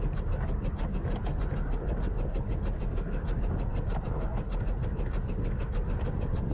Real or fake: real